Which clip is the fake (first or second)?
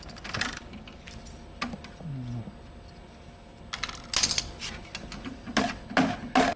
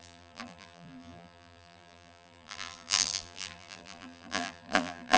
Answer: second